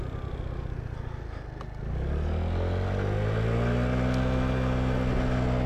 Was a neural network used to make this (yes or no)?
no